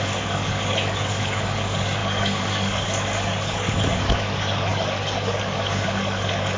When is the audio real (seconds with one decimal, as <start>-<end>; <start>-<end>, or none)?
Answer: none